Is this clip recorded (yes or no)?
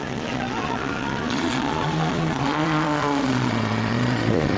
no